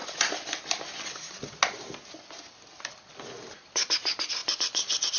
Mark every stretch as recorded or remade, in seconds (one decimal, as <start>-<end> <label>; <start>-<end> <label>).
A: 0.0-5.2 recorded